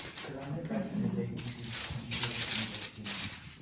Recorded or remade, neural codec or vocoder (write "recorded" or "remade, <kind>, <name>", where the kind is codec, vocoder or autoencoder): remade, vocoder, BigVGAN v2